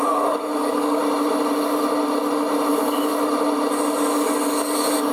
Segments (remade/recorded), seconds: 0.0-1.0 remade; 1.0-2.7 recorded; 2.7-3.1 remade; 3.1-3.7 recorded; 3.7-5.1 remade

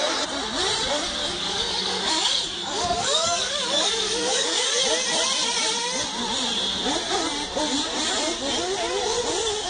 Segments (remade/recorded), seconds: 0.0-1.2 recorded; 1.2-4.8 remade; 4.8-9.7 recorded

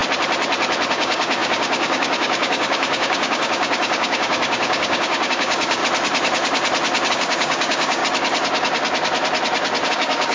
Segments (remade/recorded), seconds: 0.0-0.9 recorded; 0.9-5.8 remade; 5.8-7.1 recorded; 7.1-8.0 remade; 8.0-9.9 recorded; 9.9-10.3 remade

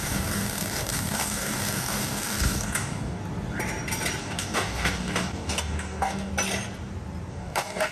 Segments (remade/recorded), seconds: 0.0-3.2 remade; 3.2-4.2 recorded; 4.2-6.3 remade; 6.3-7.3 recorded; 7.3-7.9 remade